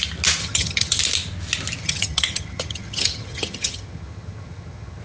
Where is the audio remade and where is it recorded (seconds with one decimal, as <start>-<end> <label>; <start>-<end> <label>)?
0.0-0.4 recorded; 0.4-1.0 remade; 1.0-1.8 recorded; 1.8-5.0 remade